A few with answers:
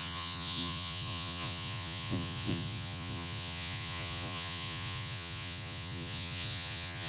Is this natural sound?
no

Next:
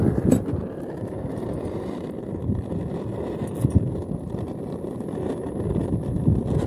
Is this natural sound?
no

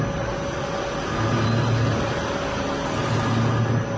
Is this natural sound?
yes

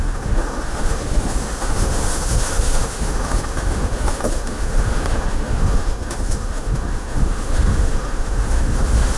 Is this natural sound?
no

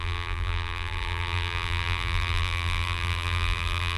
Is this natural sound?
no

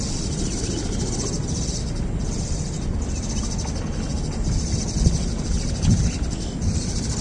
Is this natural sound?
yes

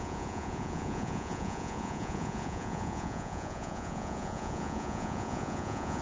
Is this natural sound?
no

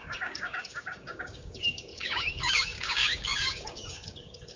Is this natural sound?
no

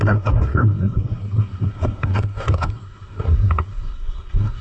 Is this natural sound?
no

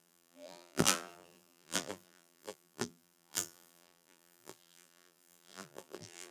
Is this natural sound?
no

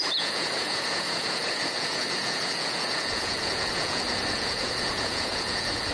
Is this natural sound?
no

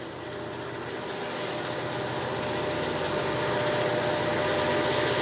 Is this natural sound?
yes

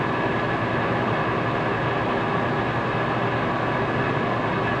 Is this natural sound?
yes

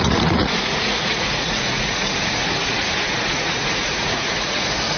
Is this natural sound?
no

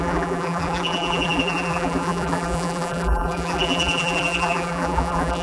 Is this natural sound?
no